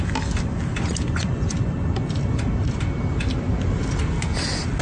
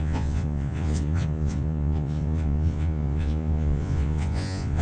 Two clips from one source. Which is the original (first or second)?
first